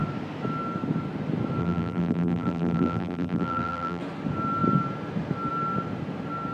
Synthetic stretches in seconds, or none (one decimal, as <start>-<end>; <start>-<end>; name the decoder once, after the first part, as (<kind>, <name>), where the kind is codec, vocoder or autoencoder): 1.6-4.0 (vocoder, BigVGAN v2)